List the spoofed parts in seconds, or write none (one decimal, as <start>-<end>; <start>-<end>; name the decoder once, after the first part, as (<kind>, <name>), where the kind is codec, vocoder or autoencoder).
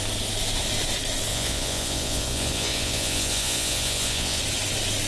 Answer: 1.3-4.4 (vocoder, Vocos)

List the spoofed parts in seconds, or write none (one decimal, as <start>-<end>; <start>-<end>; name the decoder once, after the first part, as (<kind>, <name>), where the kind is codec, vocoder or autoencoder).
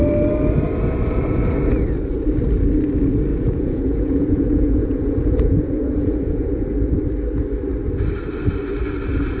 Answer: 3.3-6.7 (vocoder, Vocos)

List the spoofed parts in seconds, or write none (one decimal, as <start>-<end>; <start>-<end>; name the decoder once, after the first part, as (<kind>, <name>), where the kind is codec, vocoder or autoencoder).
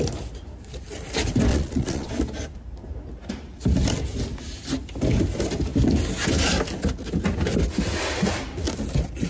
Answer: 1.5-2.1 (vocoder, Vocos)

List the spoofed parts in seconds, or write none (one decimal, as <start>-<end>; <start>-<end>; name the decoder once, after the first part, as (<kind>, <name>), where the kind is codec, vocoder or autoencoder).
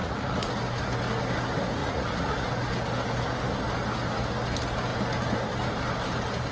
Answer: 0.0-0.5 (vocoder, Vocos); 1.8-2.5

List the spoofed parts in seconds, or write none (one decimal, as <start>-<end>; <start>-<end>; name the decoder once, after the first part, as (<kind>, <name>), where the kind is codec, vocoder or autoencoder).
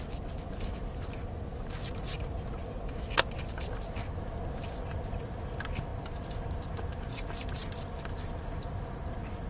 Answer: none